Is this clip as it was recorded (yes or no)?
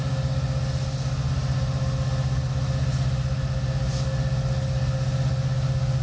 yes